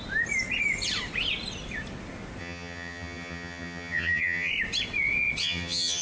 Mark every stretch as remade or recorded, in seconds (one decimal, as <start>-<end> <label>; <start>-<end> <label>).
0.0-2.4 recorded; 2.4-4.5 remade; 4.5-5.4 recorded; 5.4-6.0 remade